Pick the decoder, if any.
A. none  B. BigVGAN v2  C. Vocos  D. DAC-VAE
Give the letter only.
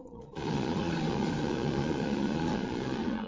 C